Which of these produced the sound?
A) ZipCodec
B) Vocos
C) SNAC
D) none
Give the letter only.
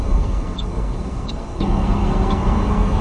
C